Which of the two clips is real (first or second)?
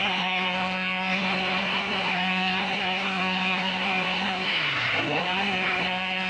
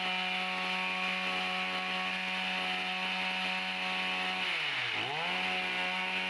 second